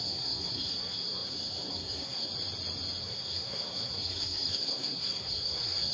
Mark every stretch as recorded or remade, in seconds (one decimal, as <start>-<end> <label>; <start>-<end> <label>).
0.0-2.3 remade; 2.3-3.0 recorded; 3.0-5.9 remade